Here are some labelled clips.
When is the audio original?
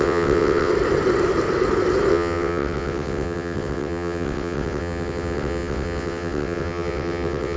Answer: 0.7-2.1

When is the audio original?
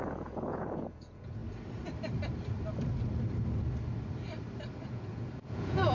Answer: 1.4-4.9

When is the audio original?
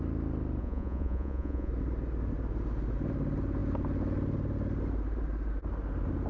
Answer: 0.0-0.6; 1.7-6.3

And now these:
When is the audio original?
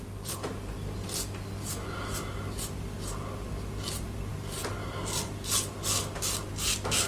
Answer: 0.0-7.1